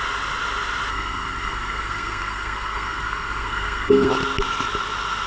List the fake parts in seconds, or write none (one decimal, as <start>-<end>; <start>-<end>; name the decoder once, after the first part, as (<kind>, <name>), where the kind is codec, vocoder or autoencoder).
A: 0.9-4.1 (codec, SNAC)

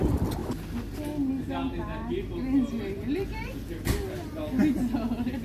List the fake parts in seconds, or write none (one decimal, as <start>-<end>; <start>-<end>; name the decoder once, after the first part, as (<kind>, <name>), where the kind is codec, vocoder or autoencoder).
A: none